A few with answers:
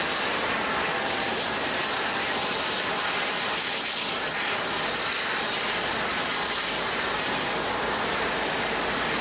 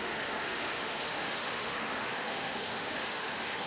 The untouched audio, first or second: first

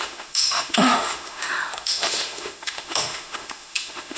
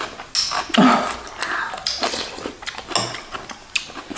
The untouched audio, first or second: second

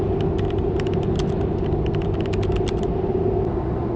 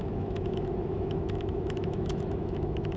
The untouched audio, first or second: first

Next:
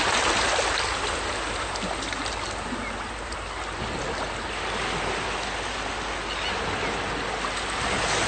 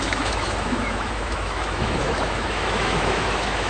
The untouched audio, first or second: first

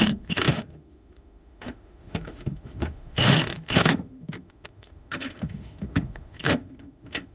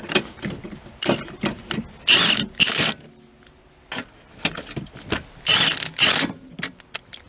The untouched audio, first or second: second